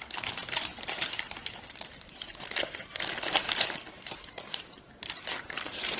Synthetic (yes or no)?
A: yes